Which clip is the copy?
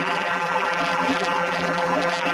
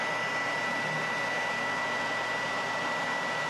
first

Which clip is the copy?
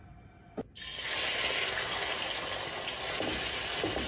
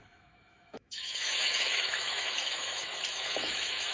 second